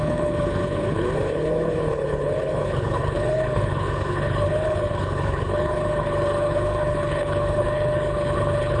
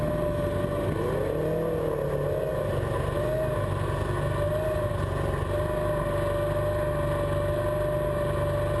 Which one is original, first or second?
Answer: second